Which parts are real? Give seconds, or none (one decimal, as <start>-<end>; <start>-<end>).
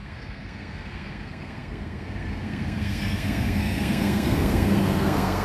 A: none